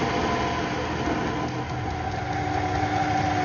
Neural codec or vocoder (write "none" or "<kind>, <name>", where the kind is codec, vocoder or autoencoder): none